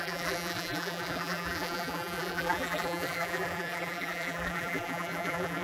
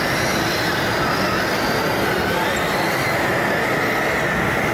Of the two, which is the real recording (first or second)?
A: second